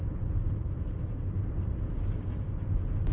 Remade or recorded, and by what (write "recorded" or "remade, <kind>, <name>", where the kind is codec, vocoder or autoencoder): recorded